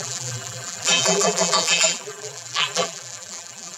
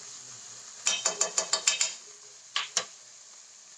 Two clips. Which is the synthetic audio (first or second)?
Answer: first